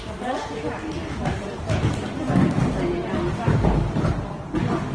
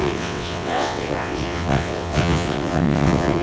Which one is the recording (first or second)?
first